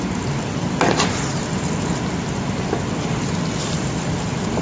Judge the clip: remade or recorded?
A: recorded